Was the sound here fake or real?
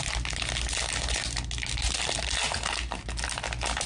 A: real